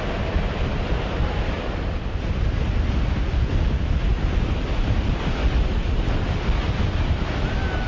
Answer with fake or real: real